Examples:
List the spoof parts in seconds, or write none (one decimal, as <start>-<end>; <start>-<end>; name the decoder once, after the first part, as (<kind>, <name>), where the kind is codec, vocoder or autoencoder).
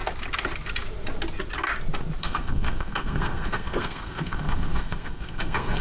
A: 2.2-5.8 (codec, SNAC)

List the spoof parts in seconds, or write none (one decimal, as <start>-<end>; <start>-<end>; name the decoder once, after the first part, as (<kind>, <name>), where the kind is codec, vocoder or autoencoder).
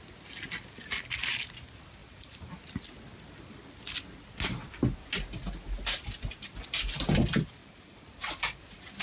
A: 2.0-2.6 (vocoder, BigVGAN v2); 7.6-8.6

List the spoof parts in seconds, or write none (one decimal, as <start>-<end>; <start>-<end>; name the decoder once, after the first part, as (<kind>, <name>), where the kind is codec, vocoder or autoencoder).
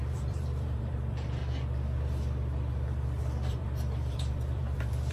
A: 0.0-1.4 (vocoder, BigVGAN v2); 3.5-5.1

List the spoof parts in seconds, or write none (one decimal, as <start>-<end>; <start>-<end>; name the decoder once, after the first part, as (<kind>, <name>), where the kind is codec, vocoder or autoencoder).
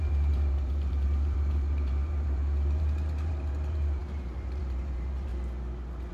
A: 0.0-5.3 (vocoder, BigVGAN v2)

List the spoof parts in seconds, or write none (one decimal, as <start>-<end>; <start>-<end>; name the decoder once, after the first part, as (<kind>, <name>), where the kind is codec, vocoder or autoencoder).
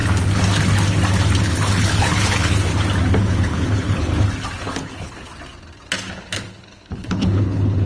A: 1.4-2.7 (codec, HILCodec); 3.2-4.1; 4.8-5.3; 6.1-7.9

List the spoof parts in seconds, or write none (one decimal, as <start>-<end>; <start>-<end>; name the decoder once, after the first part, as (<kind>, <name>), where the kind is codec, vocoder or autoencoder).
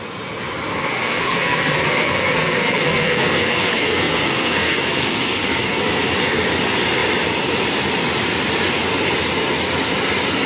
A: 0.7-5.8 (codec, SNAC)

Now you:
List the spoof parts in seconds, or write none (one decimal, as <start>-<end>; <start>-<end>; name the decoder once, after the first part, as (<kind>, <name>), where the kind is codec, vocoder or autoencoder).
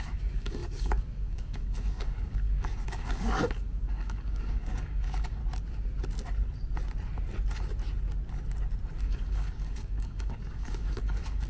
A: 0.0-5.4 (codec, DAC); 9.0-11.5